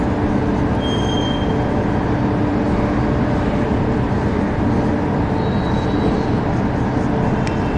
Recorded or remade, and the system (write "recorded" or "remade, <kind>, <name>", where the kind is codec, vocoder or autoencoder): recorded